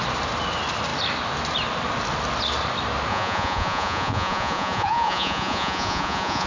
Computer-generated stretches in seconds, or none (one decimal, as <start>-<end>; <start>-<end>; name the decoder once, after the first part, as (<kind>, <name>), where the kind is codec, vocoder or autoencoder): 3.1-6.5 (vocoder, Vocos)